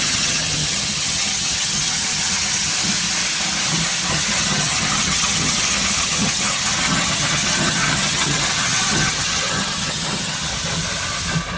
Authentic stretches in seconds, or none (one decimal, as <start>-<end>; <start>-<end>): 2.7-4.1; 10.5-11.6